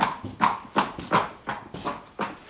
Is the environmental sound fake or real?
real